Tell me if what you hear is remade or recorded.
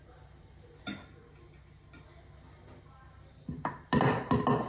recorded